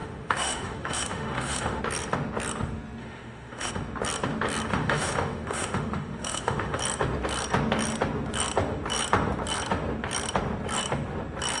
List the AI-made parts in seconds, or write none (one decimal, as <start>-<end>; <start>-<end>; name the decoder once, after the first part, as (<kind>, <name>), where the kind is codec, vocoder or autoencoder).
0.0-1.8 (autoencoder, DAC-VAE); 3.0-3.7; 4.7-6.8